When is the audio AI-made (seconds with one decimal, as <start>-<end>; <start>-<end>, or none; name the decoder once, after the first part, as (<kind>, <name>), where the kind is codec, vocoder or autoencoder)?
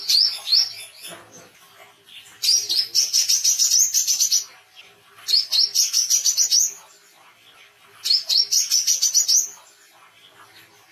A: none